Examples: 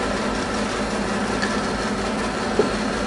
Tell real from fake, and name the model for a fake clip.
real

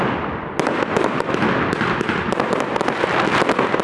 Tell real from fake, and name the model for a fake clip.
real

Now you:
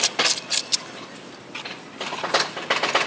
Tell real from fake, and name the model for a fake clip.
real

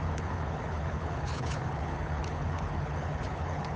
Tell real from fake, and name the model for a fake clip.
fake, codec, HILCodec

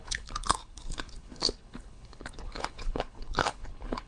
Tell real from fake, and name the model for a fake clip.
fake, codec, HILCodec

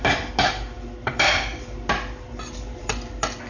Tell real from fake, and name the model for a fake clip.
real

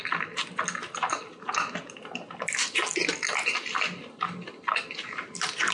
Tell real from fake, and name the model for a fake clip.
real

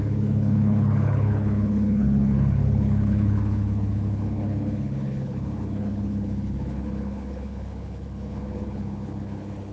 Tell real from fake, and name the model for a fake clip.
fake, codec, HILCodec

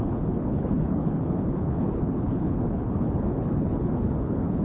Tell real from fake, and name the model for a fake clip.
fake, codec, HILCodec